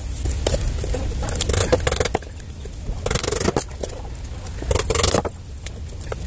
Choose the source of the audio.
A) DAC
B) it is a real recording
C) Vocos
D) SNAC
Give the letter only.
B